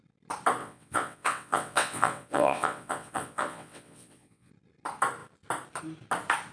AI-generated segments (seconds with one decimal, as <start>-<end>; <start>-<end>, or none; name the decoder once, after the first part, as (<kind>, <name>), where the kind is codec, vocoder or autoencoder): 0.6-4.5 (vocoder, WaveNeXt)